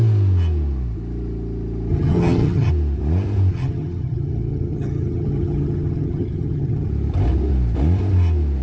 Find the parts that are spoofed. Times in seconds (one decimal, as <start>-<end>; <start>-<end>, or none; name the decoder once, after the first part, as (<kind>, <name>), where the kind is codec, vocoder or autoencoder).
1.9-2.7 (vocoder, HiFi-GAN); 3.5-6.9